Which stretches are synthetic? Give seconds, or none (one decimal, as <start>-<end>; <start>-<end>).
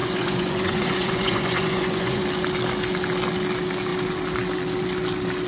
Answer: 0.0-2.2